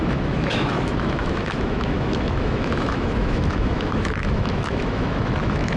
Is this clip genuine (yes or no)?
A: no